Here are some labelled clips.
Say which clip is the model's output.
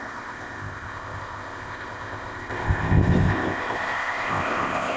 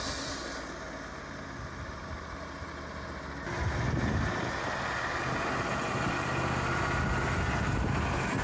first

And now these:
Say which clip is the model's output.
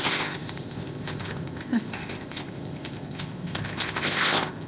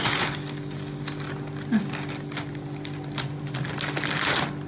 first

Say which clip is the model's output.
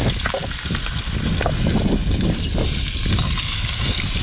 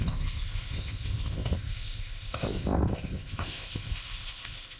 second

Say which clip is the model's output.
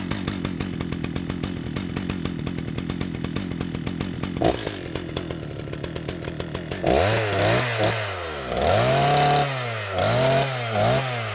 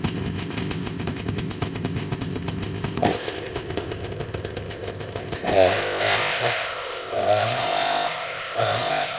second